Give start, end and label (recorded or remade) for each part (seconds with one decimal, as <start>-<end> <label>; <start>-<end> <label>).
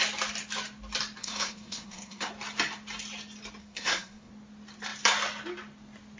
0.0-1.2 recorded; 1.2-2.3 remade; 2.3-3.6 recorded; 3.6-4.3 remade; 4.3-6.2 recorded